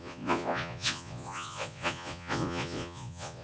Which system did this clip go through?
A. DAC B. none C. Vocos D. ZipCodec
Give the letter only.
C